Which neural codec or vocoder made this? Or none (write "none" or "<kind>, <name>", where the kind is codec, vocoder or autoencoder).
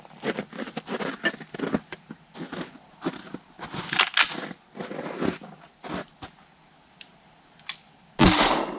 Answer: none